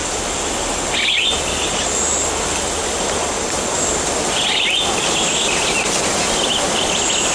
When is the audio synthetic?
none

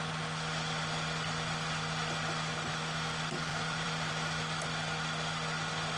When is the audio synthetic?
3.5-4.1 (vocoder, BigVGAN v2)

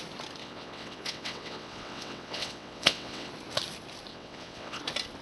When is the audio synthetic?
0.4-3.3 (vocoder, WaveNeXt); 4.1-4.8

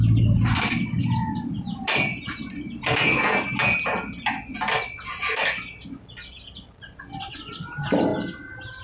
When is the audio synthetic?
none